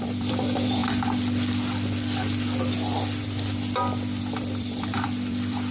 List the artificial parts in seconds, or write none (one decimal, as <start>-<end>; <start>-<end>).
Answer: 0.0-0.8; 4.2-5.7